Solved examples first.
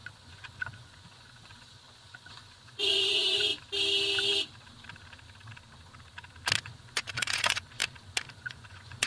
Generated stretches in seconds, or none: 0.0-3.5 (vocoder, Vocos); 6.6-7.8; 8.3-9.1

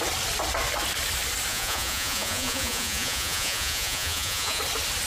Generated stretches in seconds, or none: 1.5-4.6 (vocoder, Vocos)

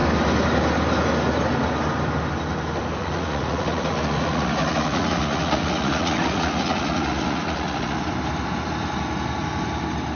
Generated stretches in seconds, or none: 3.0-8.0 (vocoder, Vocos)

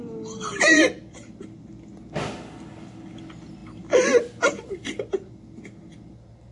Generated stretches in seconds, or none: none